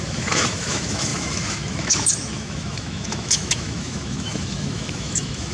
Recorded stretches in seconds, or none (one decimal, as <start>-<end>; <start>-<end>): none